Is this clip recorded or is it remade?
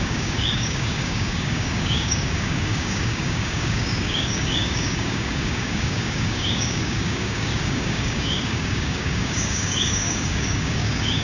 remade